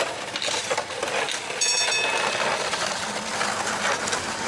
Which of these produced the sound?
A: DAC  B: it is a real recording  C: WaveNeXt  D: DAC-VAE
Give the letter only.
B